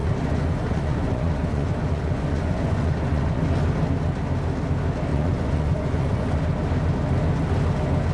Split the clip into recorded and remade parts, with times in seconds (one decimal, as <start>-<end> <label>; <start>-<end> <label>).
0.0-3.4 remade; 3.4-5.1 recorded; 5.1-6.4 remade; 6.4-8.1 recorded